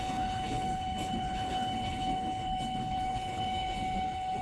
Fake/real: fake